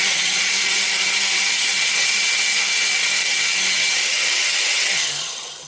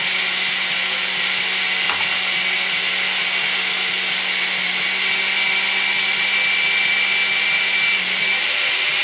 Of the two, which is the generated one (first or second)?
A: first